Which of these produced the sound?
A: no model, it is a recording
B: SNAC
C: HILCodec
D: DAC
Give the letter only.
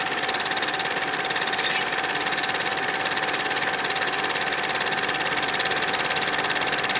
A